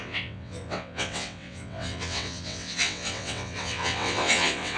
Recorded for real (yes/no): no